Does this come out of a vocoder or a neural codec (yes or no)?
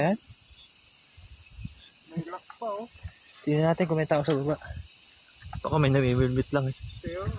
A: no